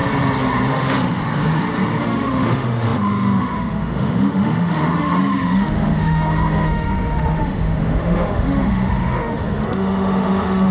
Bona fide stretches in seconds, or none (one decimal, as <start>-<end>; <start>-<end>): 0.0-0.7; 1.2-2.0